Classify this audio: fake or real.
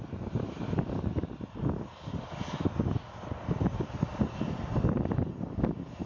real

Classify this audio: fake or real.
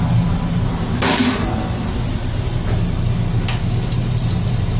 real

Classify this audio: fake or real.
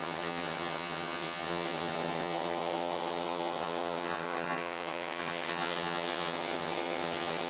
fake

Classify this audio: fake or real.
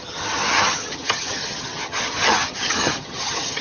fake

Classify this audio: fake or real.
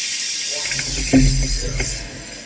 real